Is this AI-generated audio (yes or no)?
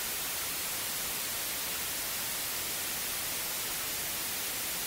no